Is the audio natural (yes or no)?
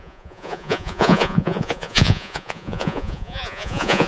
no